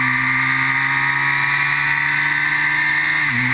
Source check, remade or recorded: recorded